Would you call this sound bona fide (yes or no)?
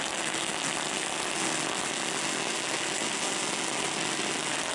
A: yes